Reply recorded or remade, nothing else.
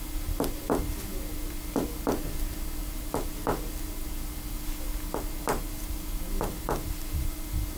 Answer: recorded